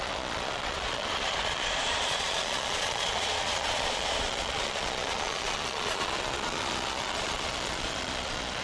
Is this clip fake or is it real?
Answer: fake